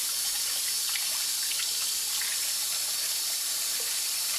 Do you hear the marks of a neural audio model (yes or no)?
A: no